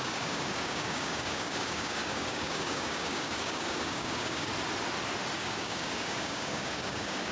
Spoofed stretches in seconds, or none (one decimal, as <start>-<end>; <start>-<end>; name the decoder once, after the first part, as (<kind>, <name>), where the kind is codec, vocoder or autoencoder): 0.0-4.5 (codec, DAC); 5.4-7.3